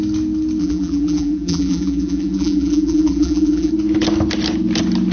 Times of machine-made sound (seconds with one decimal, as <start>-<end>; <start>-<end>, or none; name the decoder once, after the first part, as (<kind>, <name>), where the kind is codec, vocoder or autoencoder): 0.6-3.7 (vocoder, BigVGAN v2)